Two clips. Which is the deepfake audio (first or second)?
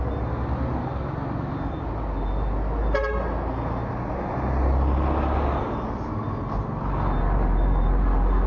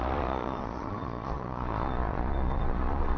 second